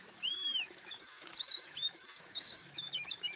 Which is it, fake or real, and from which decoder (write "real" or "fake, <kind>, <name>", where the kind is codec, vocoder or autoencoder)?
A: fake, autoencoder, DAC-VAE